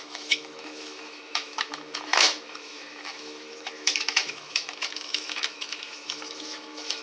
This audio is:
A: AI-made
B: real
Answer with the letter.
A